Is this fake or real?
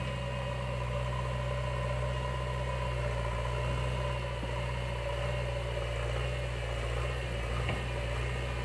real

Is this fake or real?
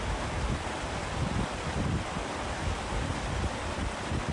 fake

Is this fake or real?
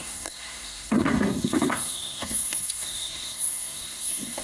fake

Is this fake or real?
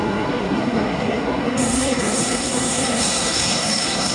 fake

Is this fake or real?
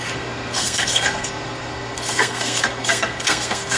fake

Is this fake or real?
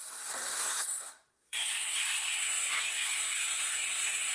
fake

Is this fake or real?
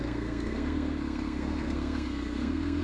fake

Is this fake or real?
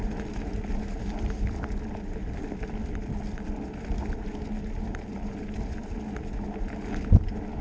real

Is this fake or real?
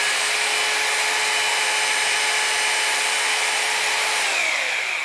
real